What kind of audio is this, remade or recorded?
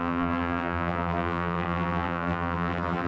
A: remade